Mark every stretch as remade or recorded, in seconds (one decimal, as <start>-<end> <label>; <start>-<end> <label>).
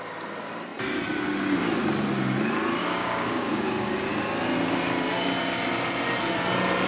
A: 0.0-2.8 recorded; 2.8-4.1 remade; 4.1-6.9 recorded